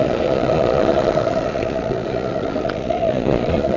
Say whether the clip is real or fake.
fake